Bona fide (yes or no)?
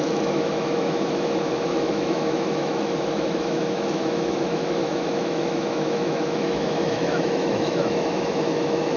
no